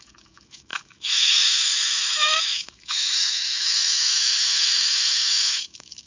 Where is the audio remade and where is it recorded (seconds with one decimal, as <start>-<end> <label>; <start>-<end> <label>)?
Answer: 0.0-6.1 remade